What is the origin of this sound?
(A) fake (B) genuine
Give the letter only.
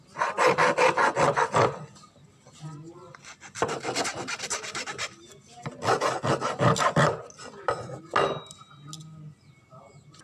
B